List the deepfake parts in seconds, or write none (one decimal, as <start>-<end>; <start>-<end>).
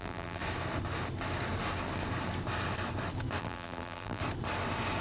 0.0-0.4; 3.4-4.2